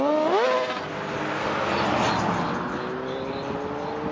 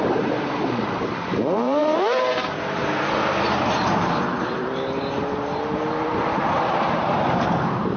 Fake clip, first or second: second